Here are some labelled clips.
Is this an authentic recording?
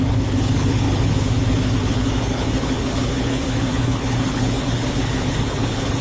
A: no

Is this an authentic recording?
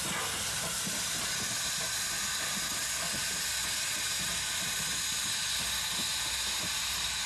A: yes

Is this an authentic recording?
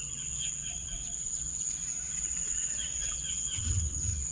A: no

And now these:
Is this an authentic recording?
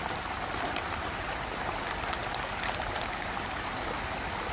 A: yes